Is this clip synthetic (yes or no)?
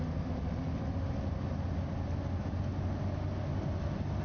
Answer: no